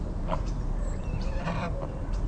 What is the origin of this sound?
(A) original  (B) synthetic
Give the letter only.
B